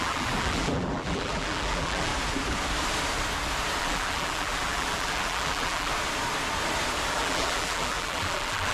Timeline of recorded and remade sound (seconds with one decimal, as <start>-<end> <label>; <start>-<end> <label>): 0.0-2.1 remade; 2.1-3.8 recorded; 3.8-5.9 remade; 5.9-7.1 recorded; 7.1-8.7 remade